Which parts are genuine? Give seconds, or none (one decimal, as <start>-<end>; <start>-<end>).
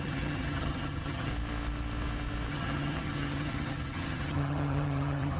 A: 1.3-2.5